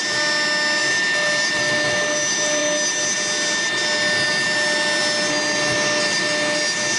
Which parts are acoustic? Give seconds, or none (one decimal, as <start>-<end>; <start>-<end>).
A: 0.0-7.0